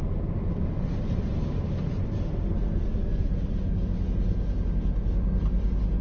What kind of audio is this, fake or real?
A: real